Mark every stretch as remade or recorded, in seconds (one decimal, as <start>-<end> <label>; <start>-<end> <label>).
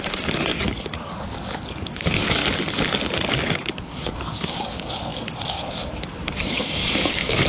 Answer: 0.0-0.5 remade; 0.5-1.3 recorded; 1.3-2.4 remade; 2.4-3.3 recorded; 3.3-7.5 remade